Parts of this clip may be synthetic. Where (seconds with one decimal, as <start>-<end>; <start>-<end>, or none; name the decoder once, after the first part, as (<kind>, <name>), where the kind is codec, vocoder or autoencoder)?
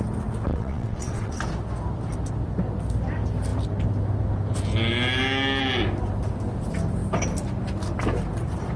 0.5-1.4 (vocoder, WaveNeXt)